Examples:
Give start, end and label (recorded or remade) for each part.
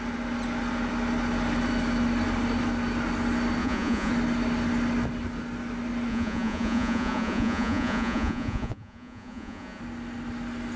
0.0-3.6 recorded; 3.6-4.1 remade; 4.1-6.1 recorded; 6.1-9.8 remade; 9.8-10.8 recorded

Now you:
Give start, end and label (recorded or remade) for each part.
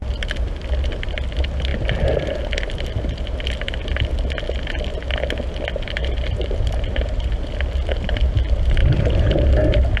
0.0-6.0 recorded; 6.0-7.3 remade; 7.3-8.8 recorded; 8.8-9.3 remade; 9.3-10.0 recorded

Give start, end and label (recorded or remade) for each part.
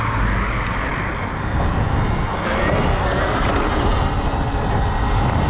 0.0-5.5 recorded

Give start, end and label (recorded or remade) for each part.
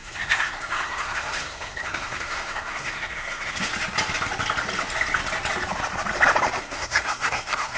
0.0-3.7 remade; 3.7-6.6 recorded; 6.6-7.8 remade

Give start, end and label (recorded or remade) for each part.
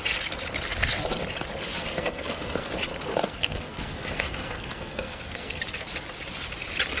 0.0-1.7 recorded; 1.7-2.7 remade; 2.7-3.1 recorded; 3.1-5.6 remade; 5.6-7.0 recorded